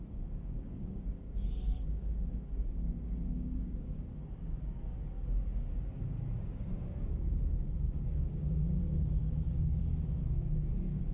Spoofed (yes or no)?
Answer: yes